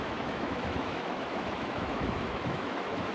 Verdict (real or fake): fake